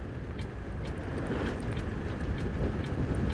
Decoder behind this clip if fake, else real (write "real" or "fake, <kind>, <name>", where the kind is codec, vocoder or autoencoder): real